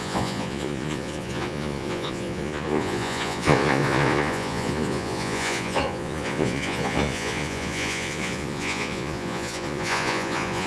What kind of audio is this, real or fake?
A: fake